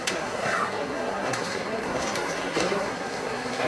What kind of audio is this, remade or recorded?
remade